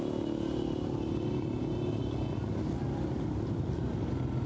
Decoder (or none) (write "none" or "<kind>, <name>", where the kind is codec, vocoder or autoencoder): none